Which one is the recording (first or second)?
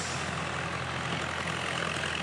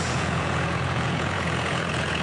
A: first